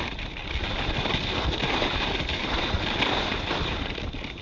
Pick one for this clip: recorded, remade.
recorded